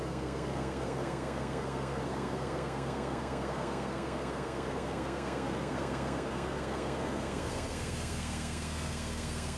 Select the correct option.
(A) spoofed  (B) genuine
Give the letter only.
A